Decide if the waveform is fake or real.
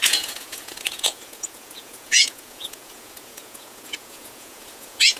fake